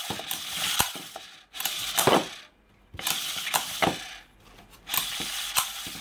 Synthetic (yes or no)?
no